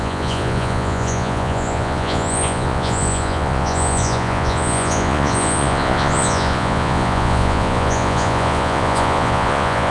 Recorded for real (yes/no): no